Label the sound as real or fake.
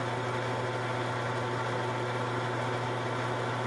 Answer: real